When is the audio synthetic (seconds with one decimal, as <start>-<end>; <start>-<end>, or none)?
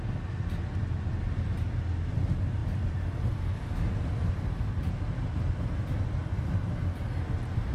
2.6-4.9; 6.2-7.7